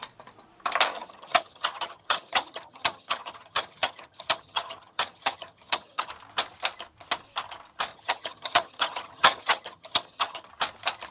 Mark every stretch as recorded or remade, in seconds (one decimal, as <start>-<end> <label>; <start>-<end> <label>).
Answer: 0.0-0.9 recorded; 0.9-6.1 remade; 6.1-7.9 recorded; 7.9-10.5 remade; 10.5-11.1 recorded